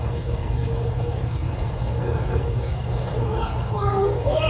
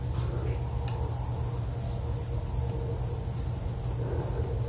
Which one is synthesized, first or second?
first